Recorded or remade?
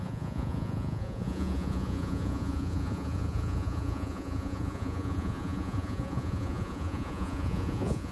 remade